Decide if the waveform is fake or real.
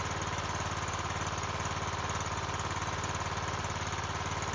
real